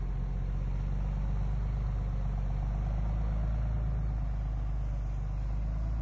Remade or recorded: recorded